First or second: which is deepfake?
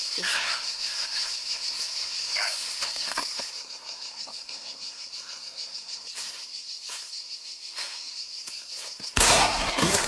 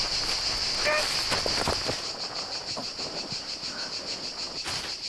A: first